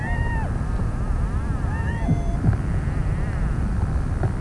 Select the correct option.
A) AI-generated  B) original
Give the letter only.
A